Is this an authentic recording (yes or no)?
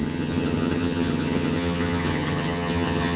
no